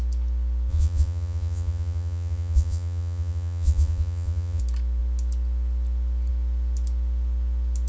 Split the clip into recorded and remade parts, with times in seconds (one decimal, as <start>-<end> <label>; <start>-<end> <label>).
0.0-0.7 recorded; 0.7-4.6 remade; 4.6-7.9 recorded